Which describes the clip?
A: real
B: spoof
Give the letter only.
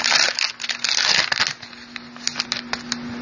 A